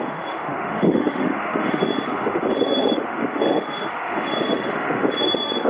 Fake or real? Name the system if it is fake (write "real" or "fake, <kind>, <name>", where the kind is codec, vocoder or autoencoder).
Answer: fake, autoencoder, DAC-VAE